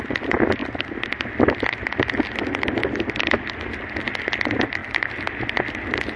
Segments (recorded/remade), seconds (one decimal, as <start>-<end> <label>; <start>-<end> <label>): 0.0-6.2 recorded